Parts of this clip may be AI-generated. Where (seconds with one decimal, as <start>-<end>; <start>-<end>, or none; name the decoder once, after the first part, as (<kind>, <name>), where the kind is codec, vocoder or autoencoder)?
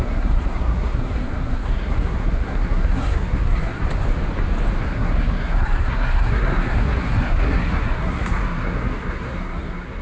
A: 0.0-3.8 (codec, SNAC); 4.8-10.0